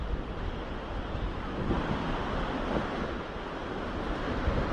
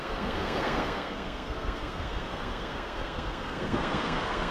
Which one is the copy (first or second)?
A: second